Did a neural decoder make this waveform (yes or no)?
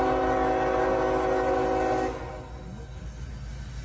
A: no